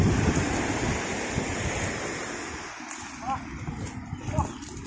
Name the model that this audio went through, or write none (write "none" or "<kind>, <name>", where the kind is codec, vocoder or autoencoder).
none